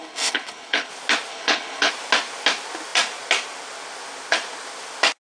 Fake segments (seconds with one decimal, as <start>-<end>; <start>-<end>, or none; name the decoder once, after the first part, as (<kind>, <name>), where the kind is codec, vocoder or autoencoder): 0.0-0.9 (codec, HILCodec); 1.3-1.9